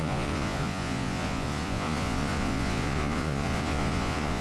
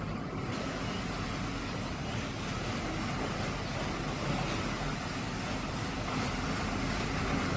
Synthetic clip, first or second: first